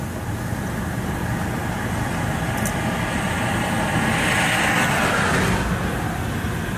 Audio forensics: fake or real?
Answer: real